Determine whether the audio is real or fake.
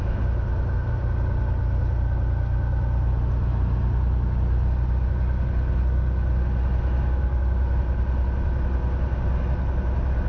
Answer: real